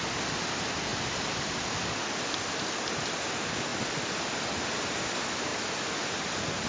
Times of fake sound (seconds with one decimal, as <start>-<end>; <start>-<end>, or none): none